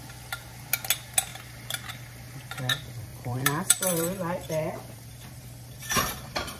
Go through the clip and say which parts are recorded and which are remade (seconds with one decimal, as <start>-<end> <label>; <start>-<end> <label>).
0.0-3.1 recorded; 3.1-6.6 remade